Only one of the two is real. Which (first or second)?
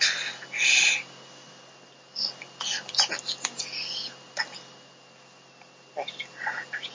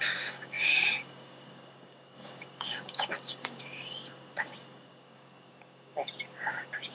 first